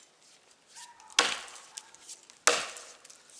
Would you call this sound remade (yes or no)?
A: no